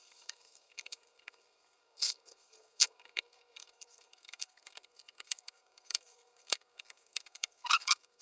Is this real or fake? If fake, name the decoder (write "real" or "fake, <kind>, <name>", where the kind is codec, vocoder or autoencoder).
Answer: fake, codec, SNAC